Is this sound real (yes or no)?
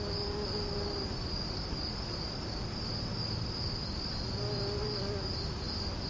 yes